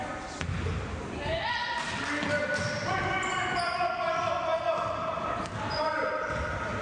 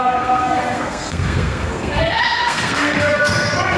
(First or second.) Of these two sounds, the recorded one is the first